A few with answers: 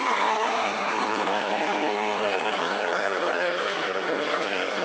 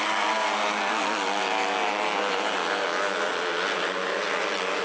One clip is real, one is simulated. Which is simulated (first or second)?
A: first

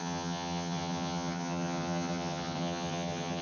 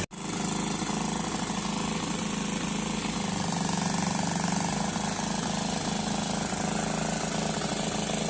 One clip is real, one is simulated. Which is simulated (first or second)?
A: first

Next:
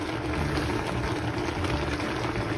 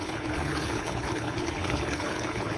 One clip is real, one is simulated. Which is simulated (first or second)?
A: second